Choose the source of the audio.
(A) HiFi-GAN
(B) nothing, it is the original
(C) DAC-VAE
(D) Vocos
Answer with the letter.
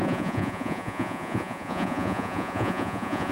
D